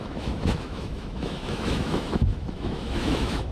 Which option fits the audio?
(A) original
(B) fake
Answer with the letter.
B